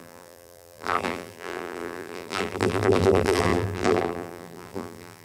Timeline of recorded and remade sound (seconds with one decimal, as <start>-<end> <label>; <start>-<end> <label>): 0.0-5.2 remade